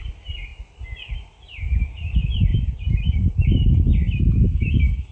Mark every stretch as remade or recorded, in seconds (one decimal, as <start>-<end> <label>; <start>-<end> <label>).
0.0-2.5 recorded; 2.5-3.7 remade; 3.7-5.1 recorded